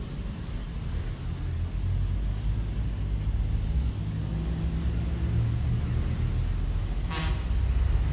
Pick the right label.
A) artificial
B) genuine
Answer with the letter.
B